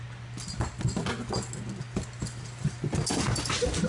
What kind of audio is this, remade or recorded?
recorded